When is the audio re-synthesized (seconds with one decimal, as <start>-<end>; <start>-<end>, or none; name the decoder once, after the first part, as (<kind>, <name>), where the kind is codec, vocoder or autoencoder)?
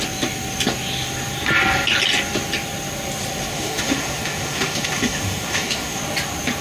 3.5-6.0 (autoencoder, DAC-VAE)